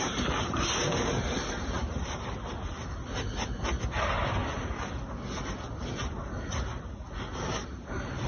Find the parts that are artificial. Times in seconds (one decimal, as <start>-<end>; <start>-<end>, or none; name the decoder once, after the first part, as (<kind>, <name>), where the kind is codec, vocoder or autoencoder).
none